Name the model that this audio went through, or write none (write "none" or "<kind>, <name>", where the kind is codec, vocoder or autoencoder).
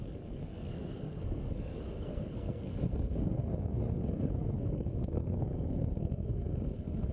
codec, SNAC